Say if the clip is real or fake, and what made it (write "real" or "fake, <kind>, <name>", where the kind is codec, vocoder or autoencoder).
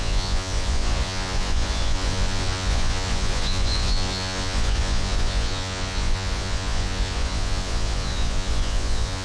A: fake, vocoder, Vocos